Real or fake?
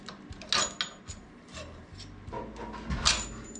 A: real